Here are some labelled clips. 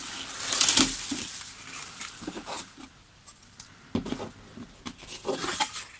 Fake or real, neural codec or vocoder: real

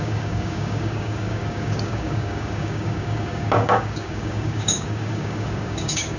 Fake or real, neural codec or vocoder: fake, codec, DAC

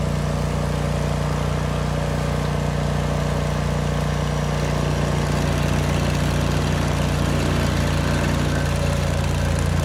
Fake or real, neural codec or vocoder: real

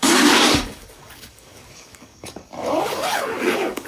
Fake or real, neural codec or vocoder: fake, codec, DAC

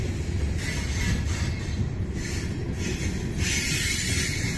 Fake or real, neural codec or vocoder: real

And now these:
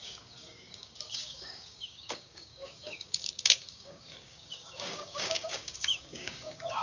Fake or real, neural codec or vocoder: fake, codec, DAC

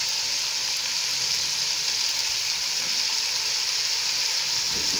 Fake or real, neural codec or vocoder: real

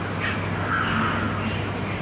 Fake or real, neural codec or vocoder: real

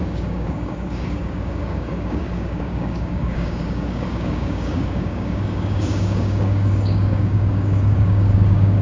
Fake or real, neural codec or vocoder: fake, codec, DAC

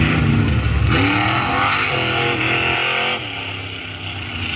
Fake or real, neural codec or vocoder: real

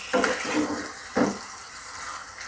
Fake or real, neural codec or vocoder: real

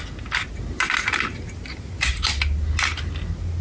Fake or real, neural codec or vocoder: real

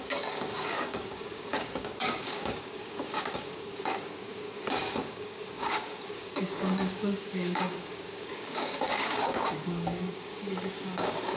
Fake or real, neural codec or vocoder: fake, codec, DAC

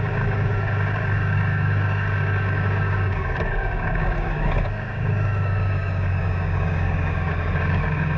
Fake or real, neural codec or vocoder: fake, codec, DAC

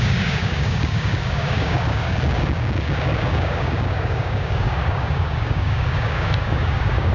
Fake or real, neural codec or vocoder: fake, codec, DAC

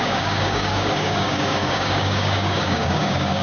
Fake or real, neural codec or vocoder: fake, codec, DAC